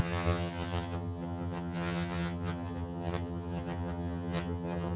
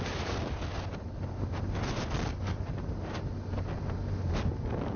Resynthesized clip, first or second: first